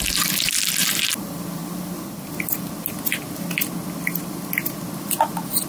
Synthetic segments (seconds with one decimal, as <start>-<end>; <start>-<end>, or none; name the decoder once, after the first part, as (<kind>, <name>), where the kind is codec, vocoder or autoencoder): 0.8-2.7 (vocoder, BigVGAN v2)